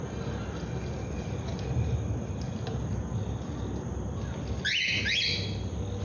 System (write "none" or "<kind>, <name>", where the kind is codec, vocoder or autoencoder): none